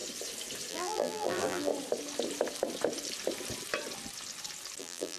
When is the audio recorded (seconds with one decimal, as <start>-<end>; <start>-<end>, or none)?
0.0-0.7; 1.7-4.8